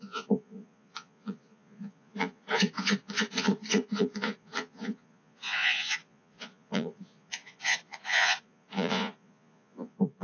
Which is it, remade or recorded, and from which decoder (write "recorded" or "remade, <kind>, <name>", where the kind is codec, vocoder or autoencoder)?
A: remade, vocoder, Vocos